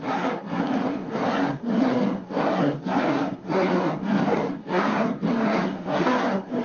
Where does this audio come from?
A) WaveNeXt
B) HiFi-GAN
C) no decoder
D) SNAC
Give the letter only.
D